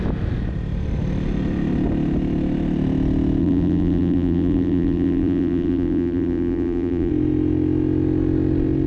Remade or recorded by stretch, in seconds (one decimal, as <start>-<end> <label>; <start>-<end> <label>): 0.0-3.4 recorded; 3.4-7.1 remade; 7.1-8.9 recorded